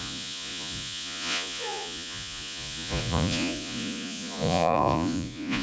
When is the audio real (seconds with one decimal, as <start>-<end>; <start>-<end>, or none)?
none